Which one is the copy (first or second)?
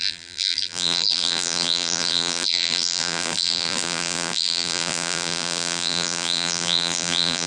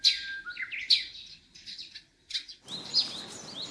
first